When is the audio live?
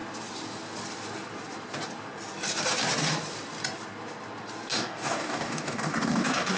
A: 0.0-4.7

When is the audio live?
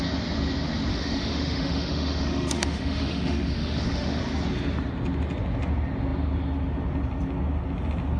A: 0.0-0.9; 4.2-8.2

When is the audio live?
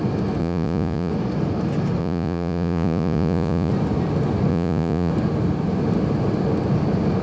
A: 0.0-0.4; 1.1-2.0; 3.7-4.5; 5.1-7.2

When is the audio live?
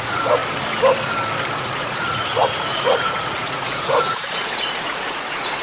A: 0.4-1.6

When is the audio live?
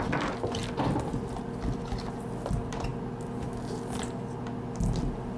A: 0.0-5.4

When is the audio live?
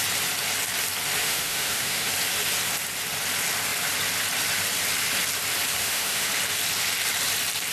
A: 0.0-1.2; 2.1-5.8; 6.3-7.7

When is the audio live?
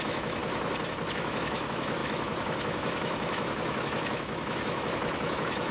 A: 0.4-1.1